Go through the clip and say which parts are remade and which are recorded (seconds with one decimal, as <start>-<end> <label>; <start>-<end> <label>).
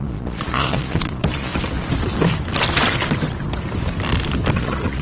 0.0-1.5 remade; 1.5-4.5 recorded; 4.5-5.0 remade